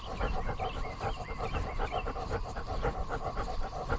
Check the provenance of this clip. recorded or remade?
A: recorded